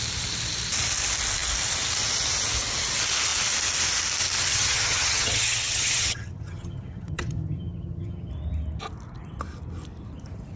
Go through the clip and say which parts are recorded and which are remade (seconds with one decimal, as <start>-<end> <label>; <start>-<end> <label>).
0.0-4.5 recorded; 4.5-8.3 remade; 8.3-10.6 recorded